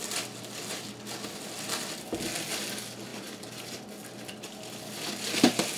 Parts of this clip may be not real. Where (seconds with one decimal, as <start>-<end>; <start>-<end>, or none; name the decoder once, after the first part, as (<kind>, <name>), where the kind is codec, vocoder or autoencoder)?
3.1-5.2 (vocoder, BigVGAN v2)